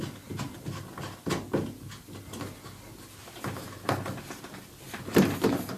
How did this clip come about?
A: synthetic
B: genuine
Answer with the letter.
B